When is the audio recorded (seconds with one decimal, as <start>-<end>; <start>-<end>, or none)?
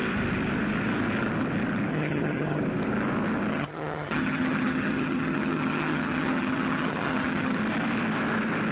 0.0-1.9; 2.6-3.5; 7.6-8.7